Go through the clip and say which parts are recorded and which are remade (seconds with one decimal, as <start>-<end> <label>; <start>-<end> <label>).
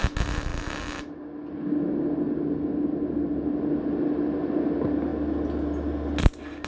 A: 0.0-6.7 recorded